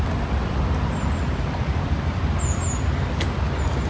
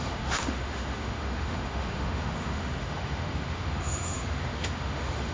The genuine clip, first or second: first